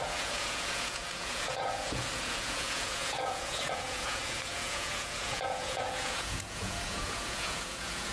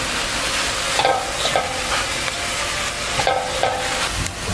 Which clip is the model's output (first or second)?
first